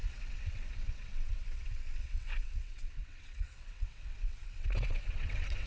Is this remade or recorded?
remade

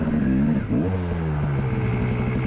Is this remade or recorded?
recorded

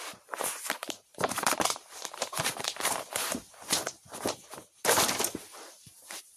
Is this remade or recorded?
remade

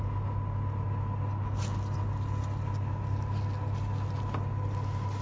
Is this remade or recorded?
recorded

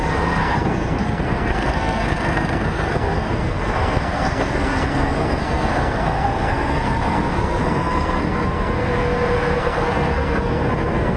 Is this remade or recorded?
remade